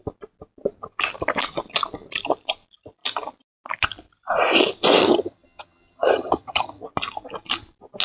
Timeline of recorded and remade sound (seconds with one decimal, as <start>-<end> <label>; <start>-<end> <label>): 0.0-5.0 recorded; 5.0-6.8 remade; 6.8-8.0 recorded